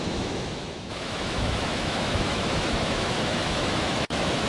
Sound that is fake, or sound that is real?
fake